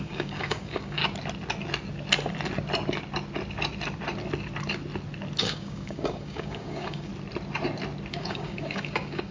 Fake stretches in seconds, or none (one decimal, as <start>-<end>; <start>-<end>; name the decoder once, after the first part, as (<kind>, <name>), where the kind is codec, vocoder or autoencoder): 0.0-1.0 (codec, DAC); 5.4-7.1; 8.1-9.3